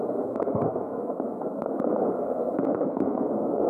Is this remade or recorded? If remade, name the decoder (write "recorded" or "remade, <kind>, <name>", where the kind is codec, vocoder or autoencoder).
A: remade, codec, SNAC